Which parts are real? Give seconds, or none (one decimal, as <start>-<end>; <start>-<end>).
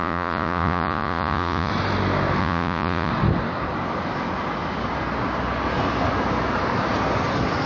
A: 1.7-2.4; 3.1-7.7